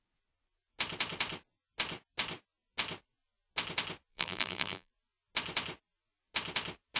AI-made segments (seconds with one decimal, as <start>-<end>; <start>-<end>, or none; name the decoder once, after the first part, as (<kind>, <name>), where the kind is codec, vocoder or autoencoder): 4.1-4.9 (vocoder, BigVGAN v2)